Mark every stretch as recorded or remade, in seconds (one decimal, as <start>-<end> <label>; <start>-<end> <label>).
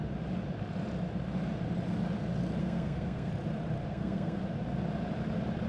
0.0-2.6 recorded; 2.6-3.3 remade; 3.3-3.9 recorded; 3.9-4.4 remade; 4.4-5.7 recorded